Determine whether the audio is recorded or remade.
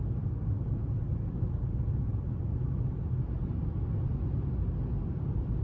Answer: recorded